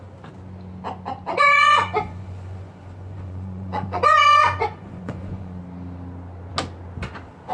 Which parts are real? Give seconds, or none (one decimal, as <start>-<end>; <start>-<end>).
0.0-1.3; 5.6-7.5